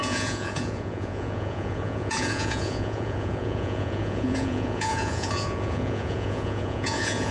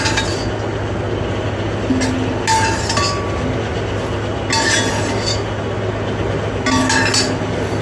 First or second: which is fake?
first